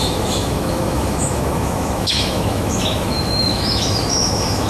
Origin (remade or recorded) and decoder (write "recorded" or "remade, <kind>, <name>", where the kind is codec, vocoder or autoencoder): remade, autoencoder, DAC-VAE